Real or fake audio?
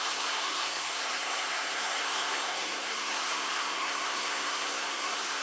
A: fake